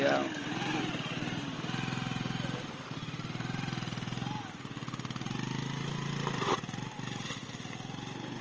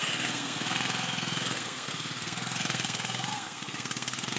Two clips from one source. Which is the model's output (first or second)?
second